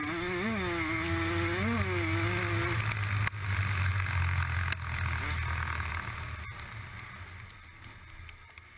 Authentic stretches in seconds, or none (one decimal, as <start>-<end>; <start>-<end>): 0.0-8.8